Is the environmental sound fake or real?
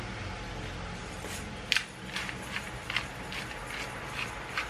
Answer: real